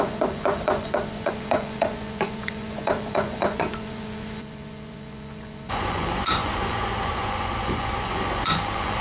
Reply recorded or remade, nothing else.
remade